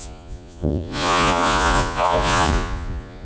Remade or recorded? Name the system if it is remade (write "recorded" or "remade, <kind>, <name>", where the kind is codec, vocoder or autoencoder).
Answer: remade, vocoder, Vocos